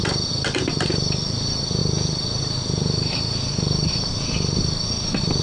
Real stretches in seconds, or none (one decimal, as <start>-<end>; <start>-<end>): 0.0-5.4